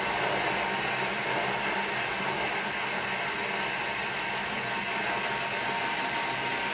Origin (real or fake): real